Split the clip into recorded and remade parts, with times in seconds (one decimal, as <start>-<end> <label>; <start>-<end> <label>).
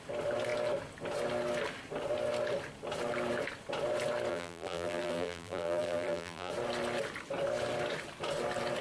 0.0-4.3 recorded; 4.3-6.5 remade; 6.5-8.8 recorded